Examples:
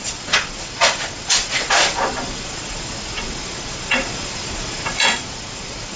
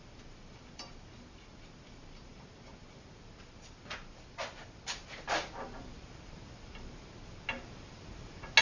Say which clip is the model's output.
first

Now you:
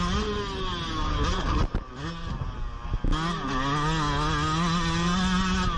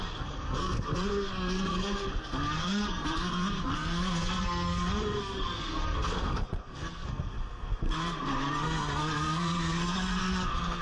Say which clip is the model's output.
second